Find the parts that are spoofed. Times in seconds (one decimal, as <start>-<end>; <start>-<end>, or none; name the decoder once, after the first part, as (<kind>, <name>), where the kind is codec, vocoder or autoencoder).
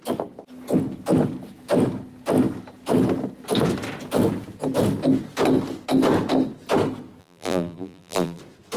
7.2-8.4 (vocoder, BigVGAN v2)